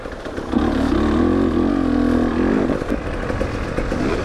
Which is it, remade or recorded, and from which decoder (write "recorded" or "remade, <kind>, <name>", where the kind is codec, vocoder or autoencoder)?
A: recorded